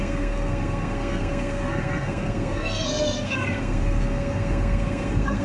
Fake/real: fake